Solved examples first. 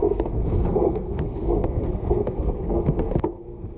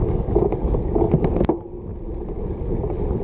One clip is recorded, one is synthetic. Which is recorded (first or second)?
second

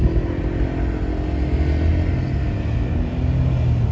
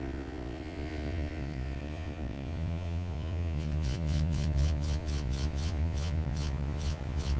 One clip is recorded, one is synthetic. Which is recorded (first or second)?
first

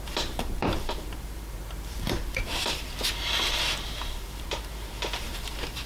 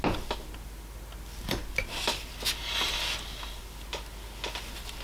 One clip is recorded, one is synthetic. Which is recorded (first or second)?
second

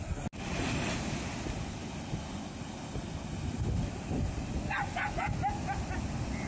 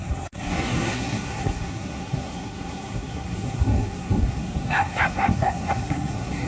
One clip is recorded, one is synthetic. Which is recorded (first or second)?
first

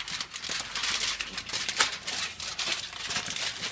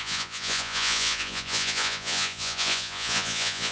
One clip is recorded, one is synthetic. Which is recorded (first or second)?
first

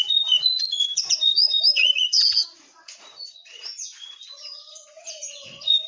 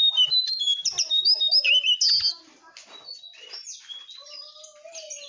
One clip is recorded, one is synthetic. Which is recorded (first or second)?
second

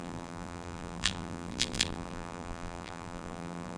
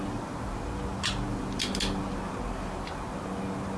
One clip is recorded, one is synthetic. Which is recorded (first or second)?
second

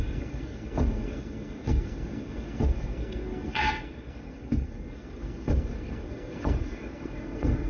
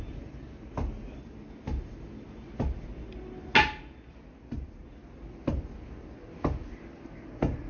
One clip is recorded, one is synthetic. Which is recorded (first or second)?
second